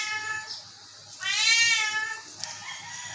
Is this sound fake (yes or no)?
no